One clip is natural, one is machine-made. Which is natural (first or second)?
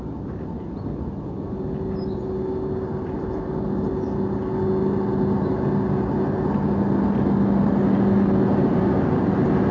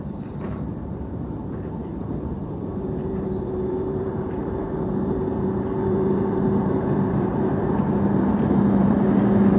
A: first